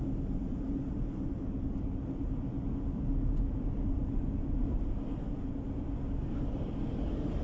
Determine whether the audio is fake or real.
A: real